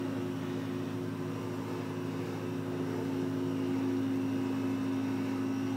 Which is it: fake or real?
real